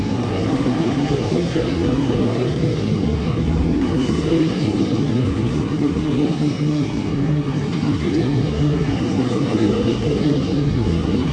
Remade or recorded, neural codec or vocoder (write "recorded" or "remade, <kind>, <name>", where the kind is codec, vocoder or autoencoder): remade, codec, SNAC